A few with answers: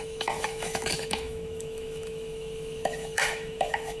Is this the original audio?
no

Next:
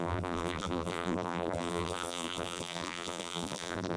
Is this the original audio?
no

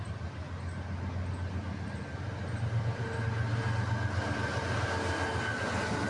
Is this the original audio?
yes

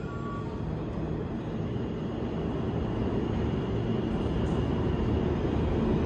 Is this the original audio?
yes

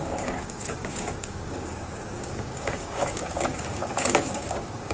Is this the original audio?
no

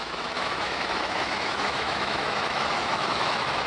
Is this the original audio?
no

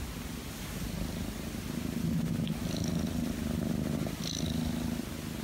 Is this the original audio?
yes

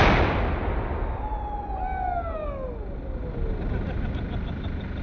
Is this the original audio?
yes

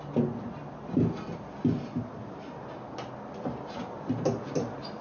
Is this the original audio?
yes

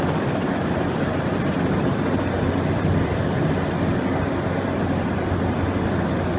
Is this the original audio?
no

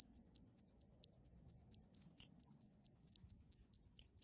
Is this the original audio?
no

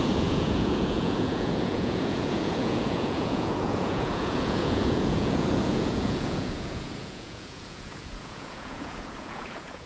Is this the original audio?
no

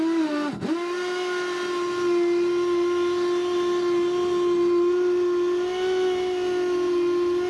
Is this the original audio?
yes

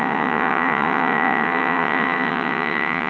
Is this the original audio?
no